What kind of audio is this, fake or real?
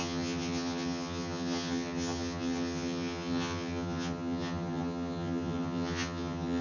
fake